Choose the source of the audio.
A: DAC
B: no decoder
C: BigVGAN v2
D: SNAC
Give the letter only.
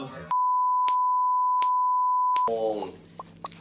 B